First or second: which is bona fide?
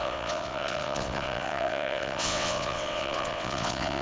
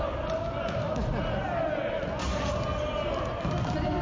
second